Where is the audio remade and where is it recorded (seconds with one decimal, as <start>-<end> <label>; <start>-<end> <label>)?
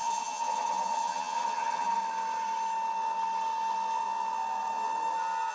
0.0-2.0 remade; 2.0-5.5 recorded